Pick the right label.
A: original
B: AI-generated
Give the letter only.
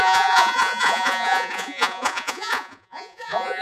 B